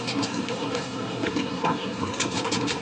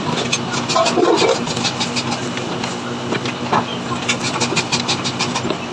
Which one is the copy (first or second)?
first